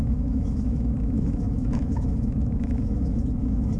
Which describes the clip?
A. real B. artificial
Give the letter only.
B